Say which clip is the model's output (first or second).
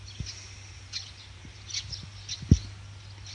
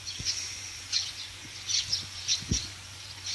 second